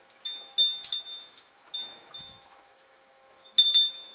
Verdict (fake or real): fake